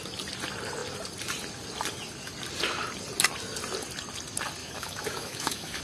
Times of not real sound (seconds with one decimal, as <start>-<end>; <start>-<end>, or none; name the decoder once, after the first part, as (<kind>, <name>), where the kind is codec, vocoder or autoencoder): 4.6-5.8 (autoencoder, DAC-VAE)

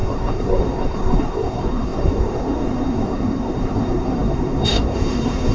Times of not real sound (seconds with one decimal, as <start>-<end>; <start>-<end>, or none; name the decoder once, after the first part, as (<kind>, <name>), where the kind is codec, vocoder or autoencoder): 0.0-5.5 (codec, SNAC)